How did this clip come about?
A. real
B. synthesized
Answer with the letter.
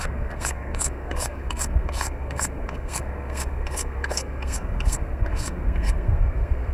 B